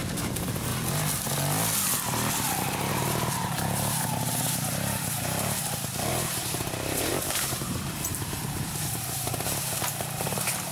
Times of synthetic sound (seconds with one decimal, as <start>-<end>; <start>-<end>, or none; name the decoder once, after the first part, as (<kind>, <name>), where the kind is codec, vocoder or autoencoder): 0.0-0.7 (vocoder, BigVGAN v2); 2.9-5.6; 6.1-10.7